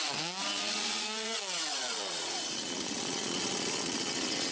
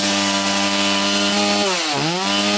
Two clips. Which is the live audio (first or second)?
second